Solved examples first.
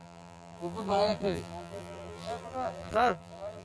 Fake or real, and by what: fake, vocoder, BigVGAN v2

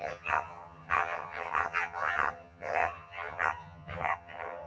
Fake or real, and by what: fake, vocoder, HiFi-GAN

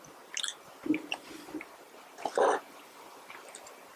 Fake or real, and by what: real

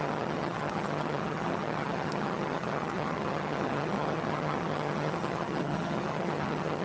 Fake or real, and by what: fake, vocoder, HiFi-GAN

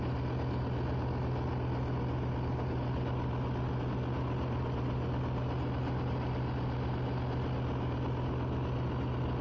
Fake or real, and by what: real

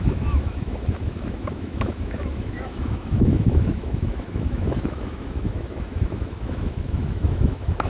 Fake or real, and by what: fake, autoencoder, DAC-VAE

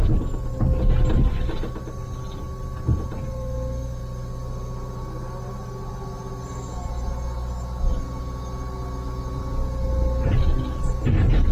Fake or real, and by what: real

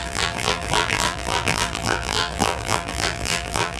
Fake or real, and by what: fake, vocoder, BigVGAN v2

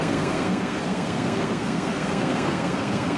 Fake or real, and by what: fake, codec, SNAC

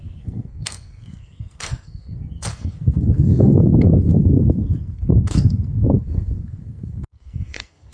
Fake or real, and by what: fake, codec, SNAC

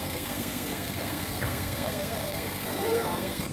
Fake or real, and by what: fake, codec, SNAC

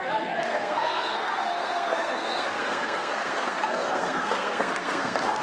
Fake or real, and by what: fake, codec, SNAC